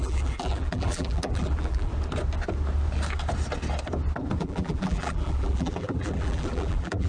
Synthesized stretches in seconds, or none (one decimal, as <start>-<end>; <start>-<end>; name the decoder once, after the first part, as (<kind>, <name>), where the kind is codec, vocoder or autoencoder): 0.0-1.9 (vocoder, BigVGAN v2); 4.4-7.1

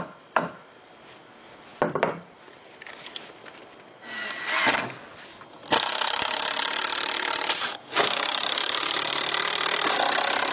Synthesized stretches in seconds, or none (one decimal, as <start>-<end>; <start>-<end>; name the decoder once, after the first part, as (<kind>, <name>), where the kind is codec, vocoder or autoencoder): 5.9-6.4 (codec, DAC); 7.8-8.9

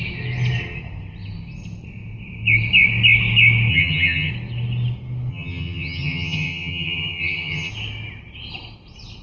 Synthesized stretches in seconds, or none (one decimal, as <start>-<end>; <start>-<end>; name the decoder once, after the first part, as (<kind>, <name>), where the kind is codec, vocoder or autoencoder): 3.7-4.3 (vocoder, HiFi-GAN); 5.3-7.7

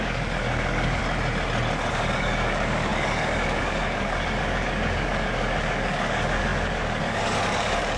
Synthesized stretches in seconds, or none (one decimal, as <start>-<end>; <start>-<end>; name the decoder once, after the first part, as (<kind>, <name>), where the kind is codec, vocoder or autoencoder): 0.0-1.0 (codec, DAC); 1.9-8.0

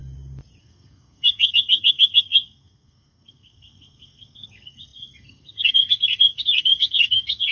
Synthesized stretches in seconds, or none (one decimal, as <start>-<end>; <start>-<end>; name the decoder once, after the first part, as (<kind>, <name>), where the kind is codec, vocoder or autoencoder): 0.6-7.5 (codec, SNAC)